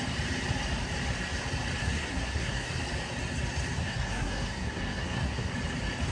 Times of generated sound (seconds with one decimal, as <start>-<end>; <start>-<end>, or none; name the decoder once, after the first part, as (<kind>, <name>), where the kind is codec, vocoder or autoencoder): 1.8-2.7 (codec, SNAC); 3.8-5.5